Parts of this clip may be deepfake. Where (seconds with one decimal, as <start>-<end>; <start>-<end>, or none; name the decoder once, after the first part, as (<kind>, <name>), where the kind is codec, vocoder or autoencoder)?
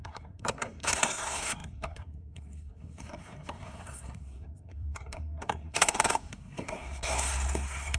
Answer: 0.0-8.0 (codec, SNAC)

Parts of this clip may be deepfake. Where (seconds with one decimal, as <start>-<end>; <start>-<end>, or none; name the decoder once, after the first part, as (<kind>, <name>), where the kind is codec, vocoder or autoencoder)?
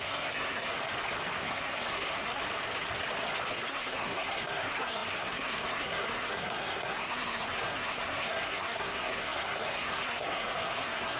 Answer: 0.0-0.8 (codec, SNAC); 1.4-2.4; 3.5-11.2